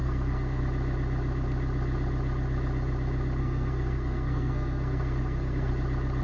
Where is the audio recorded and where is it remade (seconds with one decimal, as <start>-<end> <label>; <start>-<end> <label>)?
0.0-0.6 remade; 0.6-3.4 recorded; 3.4-5.7 remade; 5.7-6.2 recorded